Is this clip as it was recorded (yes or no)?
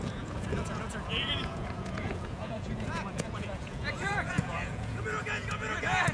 no